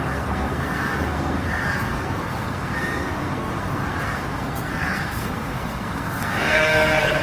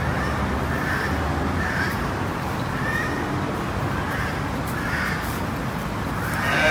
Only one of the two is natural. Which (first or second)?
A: second